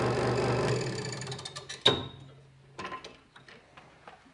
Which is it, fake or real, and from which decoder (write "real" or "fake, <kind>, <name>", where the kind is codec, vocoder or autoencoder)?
real